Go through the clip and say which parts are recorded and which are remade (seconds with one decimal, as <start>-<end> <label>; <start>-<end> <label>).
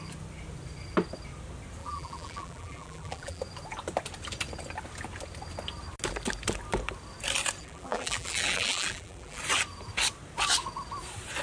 0.0-1.8 recorded; 1.8-3.4 remade; 3.4-7.6 recorded; 7.6-9.4 remade; 9.4-11.4 recorded